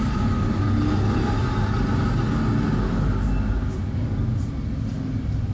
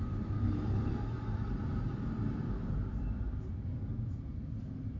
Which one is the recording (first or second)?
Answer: first